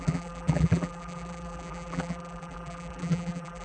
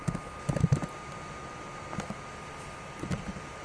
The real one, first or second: second